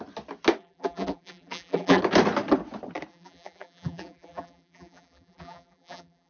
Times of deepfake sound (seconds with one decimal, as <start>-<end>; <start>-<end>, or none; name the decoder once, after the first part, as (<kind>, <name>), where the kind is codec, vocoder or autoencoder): 0.6-2.0 (vocoder, BigVGAN v2); 3.1-6.3